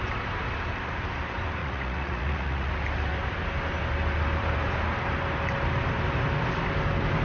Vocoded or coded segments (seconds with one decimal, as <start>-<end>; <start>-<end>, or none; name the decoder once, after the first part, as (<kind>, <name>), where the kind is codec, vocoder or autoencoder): 1.6-2.7 (vocoder, Vocos)